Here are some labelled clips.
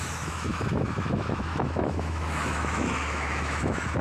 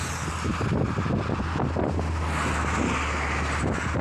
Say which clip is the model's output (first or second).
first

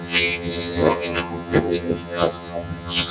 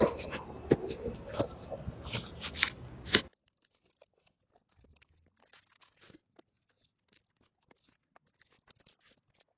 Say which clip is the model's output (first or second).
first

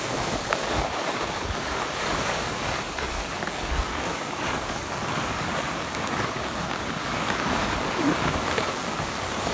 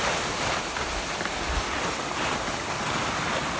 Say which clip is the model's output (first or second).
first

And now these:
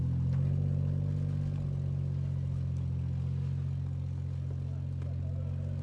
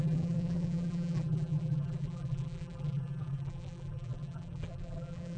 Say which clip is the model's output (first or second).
second